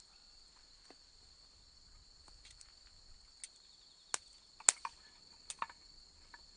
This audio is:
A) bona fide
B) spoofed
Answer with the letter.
A